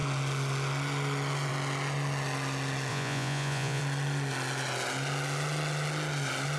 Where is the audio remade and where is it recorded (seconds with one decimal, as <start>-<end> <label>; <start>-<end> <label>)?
0.0-2.9 recorded; 2.9-3.8 remade; 3.8-6.6 recorded